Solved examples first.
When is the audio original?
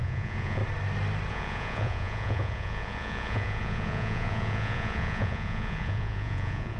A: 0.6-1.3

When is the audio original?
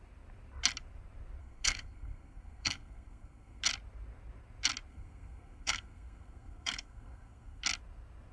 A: 0.0-1.4; 3.6-4.9; 7.6-8.3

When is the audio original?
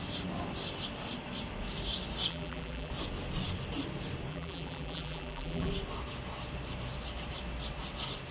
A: 0.0-2.3; 2.9-4.3; 5.7-8.3